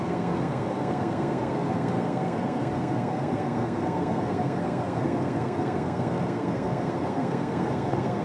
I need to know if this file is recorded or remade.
remade